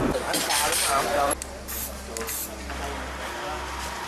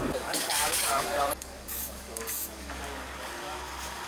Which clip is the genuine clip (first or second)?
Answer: first